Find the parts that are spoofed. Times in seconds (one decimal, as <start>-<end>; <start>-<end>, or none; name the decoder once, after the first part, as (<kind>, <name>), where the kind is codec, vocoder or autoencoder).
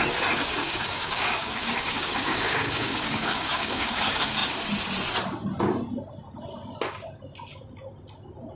0.6-4.0 (codec, DAC)